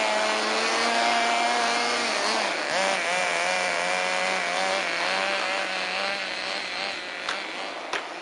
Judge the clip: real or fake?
real